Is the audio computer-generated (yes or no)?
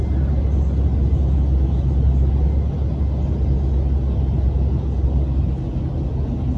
no